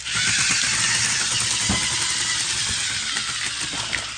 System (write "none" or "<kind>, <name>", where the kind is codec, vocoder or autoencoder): none